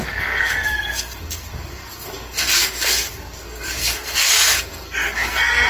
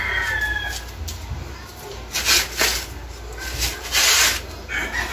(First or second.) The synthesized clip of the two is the first